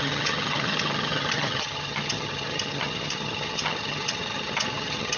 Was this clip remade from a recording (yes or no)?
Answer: yes